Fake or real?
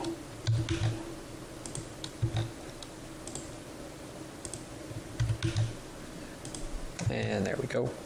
real